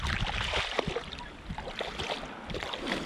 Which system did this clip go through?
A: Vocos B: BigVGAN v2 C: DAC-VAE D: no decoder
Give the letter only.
D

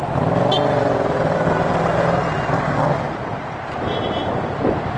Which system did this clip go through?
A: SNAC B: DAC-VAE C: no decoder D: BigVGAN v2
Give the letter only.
C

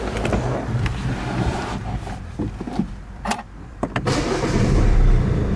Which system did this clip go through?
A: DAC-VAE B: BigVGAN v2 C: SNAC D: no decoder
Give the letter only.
B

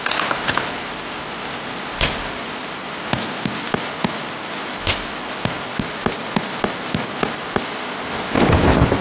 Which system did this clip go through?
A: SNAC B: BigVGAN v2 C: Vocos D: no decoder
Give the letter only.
D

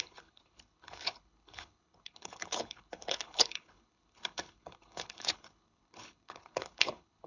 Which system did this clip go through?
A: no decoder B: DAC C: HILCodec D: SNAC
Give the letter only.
C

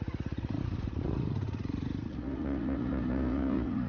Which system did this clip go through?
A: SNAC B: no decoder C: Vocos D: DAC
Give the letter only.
C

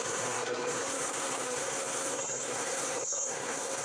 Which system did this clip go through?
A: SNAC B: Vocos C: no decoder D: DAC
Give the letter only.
A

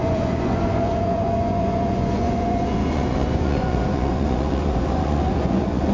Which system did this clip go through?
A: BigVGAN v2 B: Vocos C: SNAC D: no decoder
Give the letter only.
B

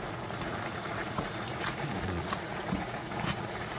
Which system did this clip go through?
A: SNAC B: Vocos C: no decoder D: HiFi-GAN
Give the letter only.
B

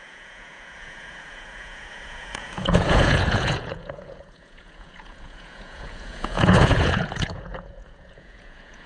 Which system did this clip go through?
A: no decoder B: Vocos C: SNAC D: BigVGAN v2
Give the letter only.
B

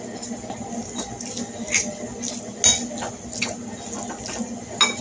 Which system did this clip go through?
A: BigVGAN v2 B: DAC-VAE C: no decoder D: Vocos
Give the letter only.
C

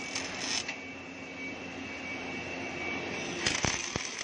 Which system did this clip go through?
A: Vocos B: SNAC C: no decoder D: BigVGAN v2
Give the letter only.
C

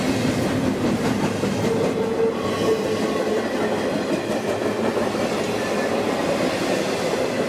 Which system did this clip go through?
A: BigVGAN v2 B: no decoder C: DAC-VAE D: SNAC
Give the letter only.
B